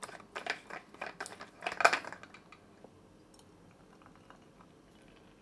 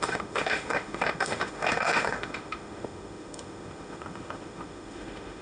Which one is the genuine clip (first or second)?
first